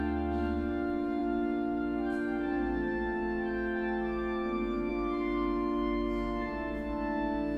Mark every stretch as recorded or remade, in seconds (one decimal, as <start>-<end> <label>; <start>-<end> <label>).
0.0-7.6 recorded